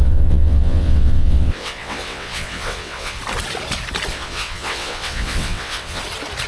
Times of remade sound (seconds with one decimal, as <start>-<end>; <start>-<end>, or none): 0.0-3.2; 4.1-6.0